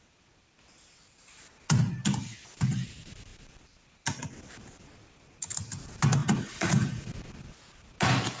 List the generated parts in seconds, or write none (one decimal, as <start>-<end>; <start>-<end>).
6.2-7.1